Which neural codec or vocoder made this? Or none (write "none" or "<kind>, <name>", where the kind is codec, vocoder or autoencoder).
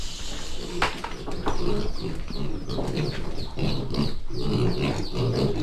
none